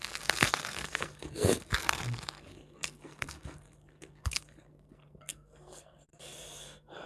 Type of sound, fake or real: fake